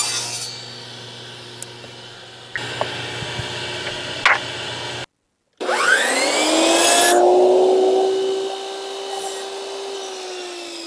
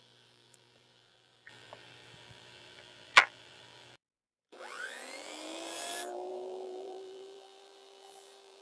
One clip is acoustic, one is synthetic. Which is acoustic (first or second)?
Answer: first